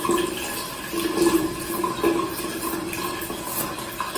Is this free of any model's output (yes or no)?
yes